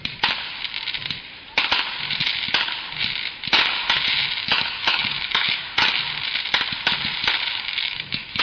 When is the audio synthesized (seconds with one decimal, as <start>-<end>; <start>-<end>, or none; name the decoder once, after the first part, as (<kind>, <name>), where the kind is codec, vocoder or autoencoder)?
4.4-5.9 (autoencoder, DAC-VAE); 7.5-8.4

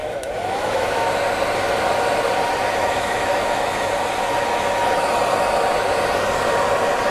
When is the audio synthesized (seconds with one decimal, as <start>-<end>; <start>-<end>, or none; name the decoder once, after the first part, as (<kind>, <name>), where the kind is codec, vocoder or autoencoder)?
0.0-1.2 (autoencoder, DAC-VAE); 2.8-3.9